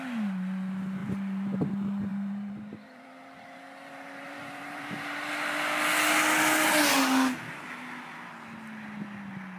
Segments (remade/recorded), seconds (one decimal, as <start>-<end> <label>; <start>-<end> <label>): 0.0-1.0 recorded; 1.0-1.7 remade; 1.7-2.1 recorded; 2.1-5.3 remade; 5.3-9.6 recorded